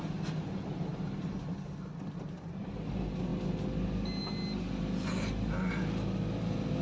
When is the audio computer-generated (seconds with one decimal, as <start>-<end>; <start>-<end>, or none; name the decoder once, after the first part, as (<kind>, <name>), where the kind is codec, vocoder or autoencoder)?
none